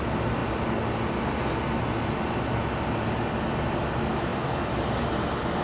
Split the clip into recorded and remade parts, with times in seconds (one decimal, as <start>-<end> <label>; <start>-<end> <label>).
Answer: 0.0-5.6 recorded